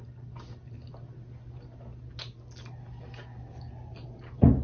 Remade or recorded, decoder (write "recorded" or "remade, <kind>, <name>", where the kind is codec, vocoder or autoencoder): recorded